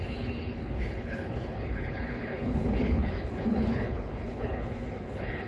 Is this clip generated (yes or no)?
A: yes